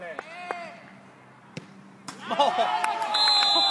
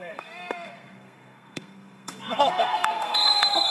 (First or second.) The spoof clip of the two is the second